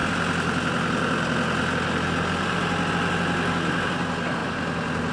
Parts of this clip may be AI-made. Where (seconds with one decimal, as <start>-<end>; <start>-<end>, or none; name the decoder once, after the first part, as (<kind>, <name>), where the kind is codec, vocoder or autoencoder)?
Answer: none